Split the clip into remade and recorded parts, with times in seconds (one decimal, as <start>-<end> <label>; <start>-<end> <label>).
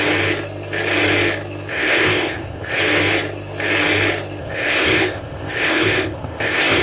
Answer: 0.0-1.7 recorded; 1.7-2.8 remade; 2.8-4.4 recorded; 4.4-6.8 remade